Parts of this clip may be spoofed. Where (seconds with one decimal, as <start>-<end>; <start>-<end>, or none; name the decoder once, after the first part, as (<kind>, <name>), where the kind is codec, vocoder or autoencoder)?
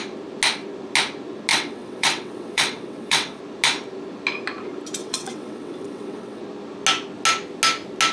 1.5-3.4 (vocoder, WaveNeXt); 5.0-6.4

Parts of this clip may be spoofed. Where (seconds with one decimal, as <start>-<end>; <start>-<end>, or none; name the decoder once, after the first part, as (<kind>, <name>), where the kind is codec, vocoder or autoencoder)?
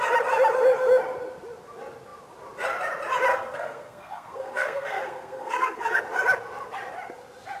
3.3-6.0 (codec, SNAC)